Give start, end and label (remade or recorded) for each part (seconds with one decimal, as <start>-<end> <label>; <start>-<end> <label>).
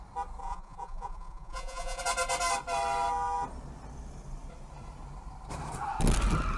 0.0-0.4 recorded; 0.4-2.0 remade; 2.0-6.6 recorded